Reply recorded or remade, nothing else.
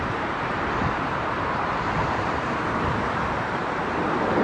remade